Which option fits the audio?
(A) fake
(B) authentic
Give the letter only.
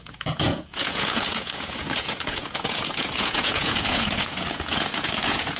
A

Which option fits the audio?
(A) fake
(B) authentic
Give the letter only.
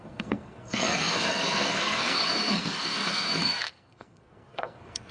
A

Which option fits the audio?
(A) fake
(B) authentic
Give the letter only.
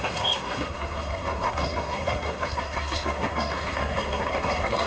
A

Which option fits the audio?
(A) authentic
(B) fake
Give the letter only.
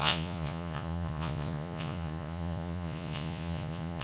B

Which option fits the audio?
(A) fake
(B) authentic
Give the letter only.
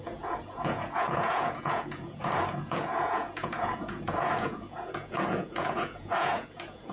A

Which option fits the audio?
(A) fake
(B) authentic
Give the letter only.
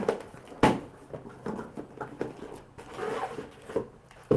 B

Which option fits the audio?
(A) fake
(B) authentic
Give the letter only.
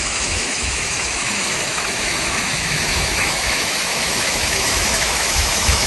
A